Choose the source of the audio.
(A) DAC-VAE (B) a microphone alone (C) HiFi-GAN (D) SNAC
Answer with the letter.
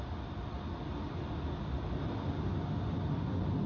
B